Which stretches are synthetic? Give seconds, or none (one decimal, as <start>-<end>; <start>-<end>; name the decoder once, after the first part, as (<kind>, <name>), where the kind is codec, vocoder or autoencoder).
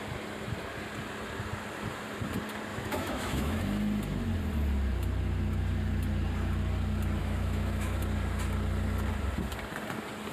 2.7-3.6 (autoencoder, DAC-VAE); 7.2-8.0